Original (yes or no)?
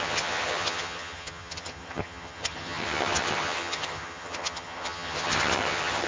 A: no